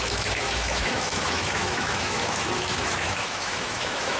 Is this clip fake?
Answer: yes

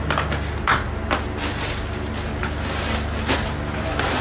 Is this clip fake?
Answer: no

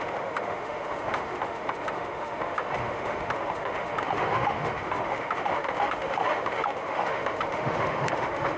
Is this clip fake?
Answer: yes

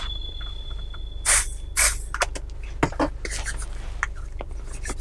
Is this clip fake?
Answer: no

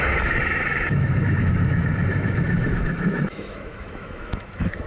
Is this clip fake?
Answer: yes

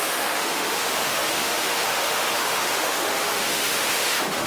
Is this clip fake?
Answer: yes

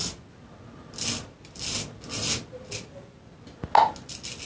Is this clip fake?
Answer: no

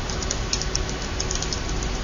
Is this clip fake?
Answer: no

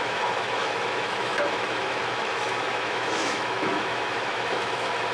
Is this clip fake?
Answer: yes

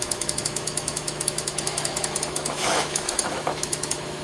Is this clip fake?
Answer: yes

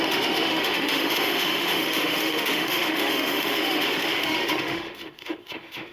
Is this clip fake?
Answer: yes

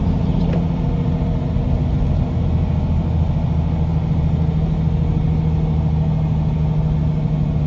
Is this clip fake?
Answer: no